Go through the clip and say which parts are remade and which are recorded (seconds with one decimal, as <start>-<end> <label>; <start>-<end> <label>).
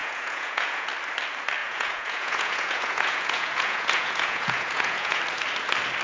0.0-0.9 remade; 0.9-1.6 recorded; 1.6-5.2 remade; 5.2-6.0 recorded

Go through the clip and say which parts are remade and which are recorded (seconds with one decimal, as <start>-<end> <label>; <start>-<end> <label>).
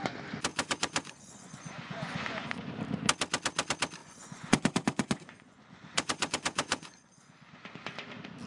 0.0-0.5 recorded; 0.5-2.7 remade; 2.7-4.0 recorded; 4.0-7.7 remade; 7.7-8.5 recorded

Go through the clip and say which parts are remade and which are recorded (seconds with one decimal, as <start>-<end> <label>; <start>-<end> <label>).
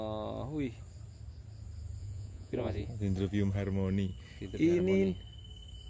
0.0-2.0 recorded; 2.0-2.9 remade; 2.9-5.9 recorded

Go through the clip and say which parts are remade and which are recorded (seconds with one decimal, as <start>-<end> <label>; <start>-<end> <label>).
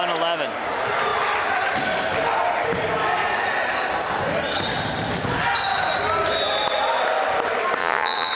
0.0-7.8 recorded; 7.8-8.3 remade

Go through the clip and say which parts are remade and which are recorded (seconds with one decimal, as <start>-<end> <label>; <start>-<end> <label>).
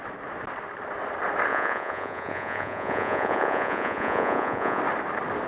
0.0-1.5 recorded; 1.5-4.8 remade; 4.8-5.5 recorded